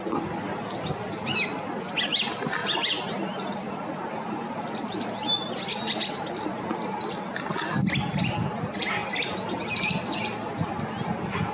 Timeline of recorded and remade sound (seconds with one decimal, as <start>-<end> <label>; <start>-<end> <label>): 0.0-11.5 recorded